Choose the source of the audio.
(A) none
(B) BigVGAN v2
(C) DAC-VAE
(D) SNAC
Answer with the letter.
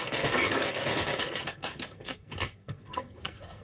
D